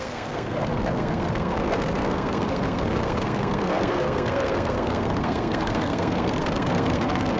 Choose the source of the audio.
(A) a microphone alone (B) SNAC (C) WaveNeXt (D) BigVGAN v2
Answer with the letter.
B